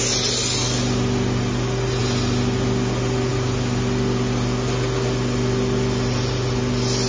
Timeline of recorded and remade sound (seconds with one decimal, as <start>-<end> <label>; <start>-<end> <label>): 0.0-7.1 recorded